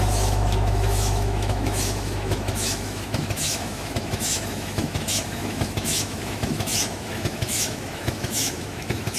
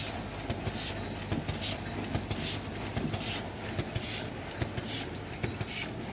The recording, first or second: second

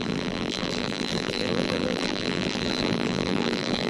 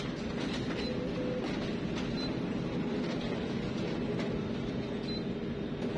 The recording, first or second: second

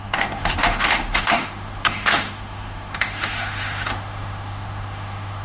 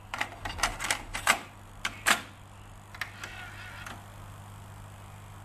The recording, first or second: second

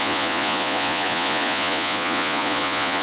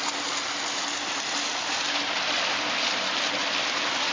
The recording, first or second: second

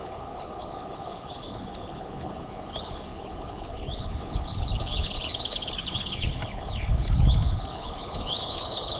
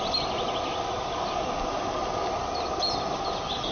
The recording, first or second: second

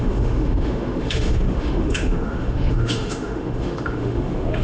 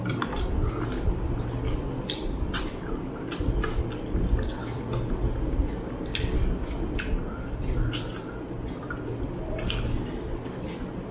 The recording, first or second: second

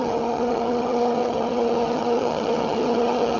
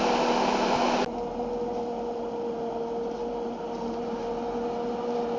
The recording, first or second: second